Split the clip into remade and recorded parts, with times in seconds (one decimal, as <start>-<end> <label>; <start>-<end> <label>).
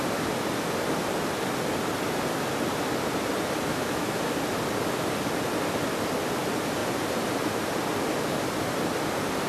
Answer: 0.0-3.7 recorded; 3.7-4.2 remade; 4.2-9.5 recorded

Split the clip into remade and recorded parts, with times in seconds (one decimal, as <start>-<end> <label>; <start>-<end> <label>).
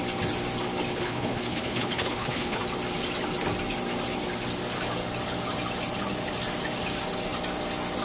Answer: 0.0-0.9 recorded; 0.9-2.6 remade; 2.6-8.0 recorded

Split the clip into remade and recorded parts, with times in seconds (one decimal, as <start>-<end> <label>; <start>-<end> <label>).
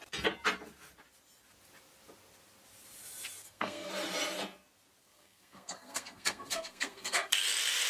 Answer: 0.0-3.4 recorded; 3.4-3.9 remade; 3.9-5.0 recorded; 5.0-7.3 remade; 7.3-7.9 recorded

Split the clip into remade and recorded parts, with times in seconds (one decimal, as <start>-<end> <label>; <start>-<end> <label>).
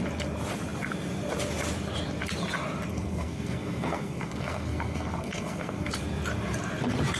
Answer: 0.0-2.9 recorded; 2.9-5.9 remade; 5.9-7.2 recorded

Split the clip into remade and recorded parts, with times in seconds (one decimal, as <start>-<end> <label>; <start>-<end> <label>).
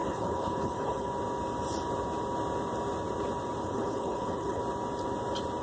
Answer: 0.0-1.1 remade; 1.1-3.6 recorded; 3.6-4.6 remade; 4.6-5.6 recorded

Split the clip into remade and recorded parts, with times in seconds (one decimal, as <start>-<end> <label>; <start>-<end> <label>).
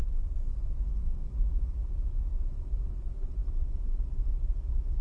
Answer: 0.0-5.0 recorded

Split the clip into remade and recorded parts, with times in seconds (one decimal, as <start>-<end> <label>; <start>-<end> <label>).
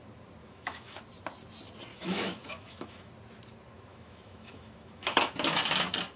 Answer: 0.0-0.4 recorded; 0.4-1.0 remade; 1.0-1.9 recorded; 1.9-3.1 remade; 3.1-3.9 recorded; 3.9-5.3 remade; 5.3-6.2 recorded